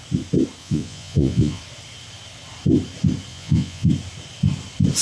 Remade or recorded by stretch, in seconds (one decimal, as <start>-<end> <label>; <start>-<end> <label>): 0.0-0.6 recorded; 0.6-1.6 remade; 1.6-3.3 recorded; 3.3-3.9 remade; 3.9-5.0 recorded